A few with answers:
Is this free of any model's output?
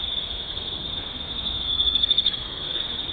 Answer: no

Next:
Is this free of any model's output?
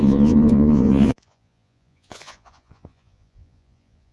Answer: no